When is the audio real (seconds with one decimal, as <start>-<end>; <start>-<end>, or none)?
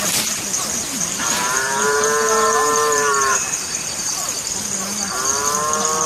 0.0-0.8; 4.1-6.1